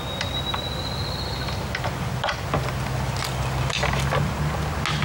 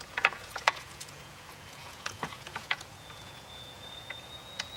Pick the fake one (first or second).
second